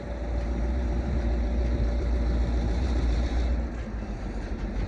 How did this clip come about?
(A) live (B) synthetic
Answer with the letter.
B